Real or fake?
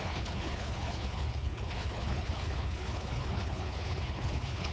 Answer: fake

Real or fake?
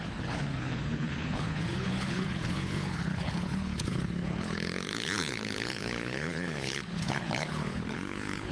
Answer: fake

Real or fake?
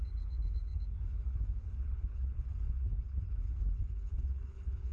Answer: fake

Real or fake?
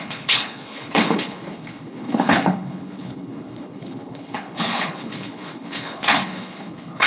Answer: fake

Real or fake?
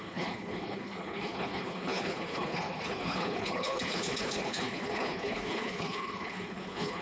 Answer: fake